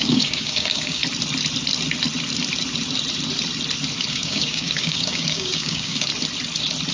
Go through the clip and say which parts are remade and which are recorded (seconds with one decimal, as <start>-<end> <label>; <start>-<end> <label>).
0.0-1.0 remade; 1.0-4.1 recorded; 4.1-6.1 remade; 6.1-6.9 recorded